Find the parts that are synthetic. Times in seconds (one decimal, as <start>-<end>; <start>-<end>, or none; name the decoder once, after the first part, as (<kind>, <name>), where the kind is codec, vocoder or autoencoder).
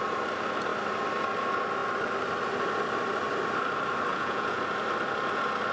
4.1-4.6 (vocoder, Vocos)